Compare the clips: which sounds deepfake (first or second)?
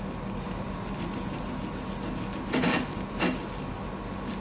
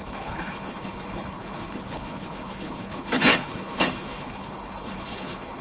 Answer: second